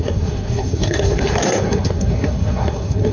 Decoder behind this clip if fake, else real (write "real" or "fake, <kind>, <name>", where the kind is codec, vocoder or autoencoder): fake, codec, SNAC